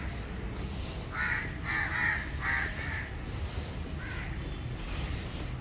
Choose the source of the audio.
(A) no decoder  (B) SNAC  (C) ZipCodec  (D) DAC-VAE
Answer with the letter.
A